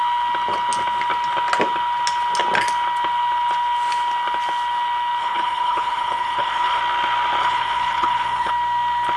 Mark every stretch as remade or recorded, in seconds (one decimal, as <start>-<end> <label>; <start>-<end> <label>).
0.0-5.2 recorded; 5.2-6.8 remade; 6.8-7.4 recorded; 7.4-8.5 remade; 8.5-9.2 recorded